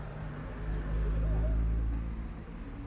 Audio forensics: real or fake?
real